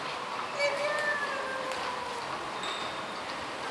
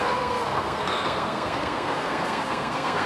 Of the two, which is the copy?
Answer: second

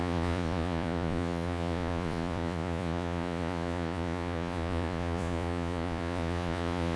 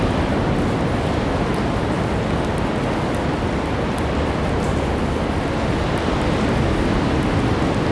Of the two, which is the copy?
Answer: first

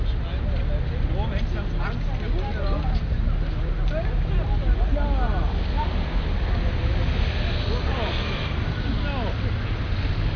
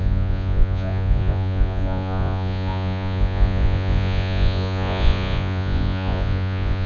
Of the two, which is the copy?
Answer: second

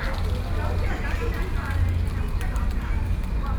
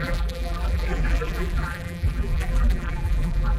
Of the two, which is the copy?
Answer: second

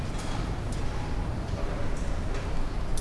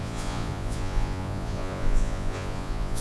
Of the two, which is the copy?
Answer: second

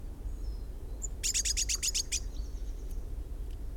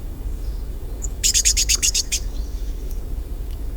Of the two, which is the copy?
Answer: second